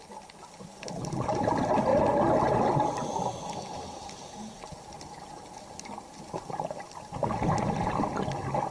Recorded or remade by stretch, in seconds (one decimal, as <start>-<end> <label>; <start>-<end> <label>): 0.0-8.7 recorded